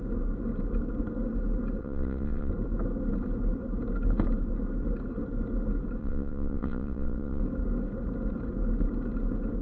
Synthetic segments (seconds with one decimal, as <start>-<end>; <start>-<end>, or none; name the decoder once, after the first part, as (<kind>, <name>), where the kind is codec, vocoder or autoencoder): 1.8-2.5 (vocoder, WaveNeXt); 6.0-7.4